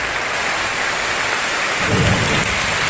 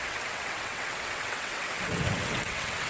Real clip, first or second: first